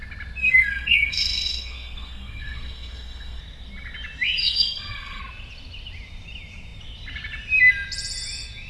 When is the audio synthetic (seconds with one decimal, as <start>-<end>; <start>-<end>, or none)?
0.4-3.4; 4.4-5.2